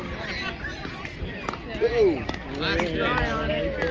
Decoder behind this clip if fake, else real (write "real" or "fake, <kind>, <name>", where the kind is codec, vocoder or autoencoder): real